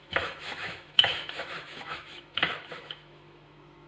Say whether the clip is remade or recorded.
remade